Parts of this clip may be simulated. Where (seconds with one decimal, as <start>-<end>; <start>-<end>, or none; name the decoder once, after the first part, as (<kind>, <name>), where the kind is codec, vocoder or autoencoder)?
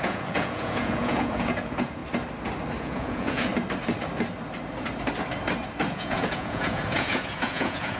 0.0-2.0 (vocoder, Vocos); 2.8-3.5; 5.9-8.0